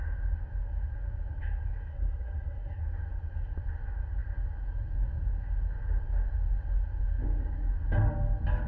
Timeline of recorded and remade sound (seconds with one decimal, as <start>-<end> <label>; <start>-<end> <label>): 0.0-1.9 recorded; 1.9-2.8 remade; 2.8-8.7 recorded